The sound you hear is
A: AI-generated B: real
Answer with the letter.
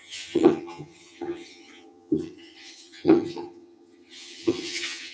A